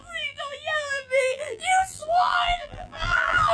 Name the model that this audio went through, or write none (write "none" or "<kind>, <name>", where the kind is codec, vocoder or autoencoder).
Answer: vocoder, BigVGAN v2